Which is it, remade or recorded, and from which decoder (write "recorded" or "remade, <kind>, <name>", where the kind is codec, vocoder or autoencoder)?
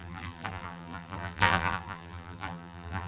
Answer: remade, vocoder, BigVGAN v2